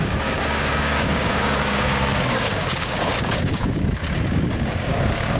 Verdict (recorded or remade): remade